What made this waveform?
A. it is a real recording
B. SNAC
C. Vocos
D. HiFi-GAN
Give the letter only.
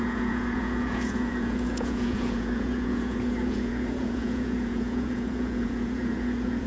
C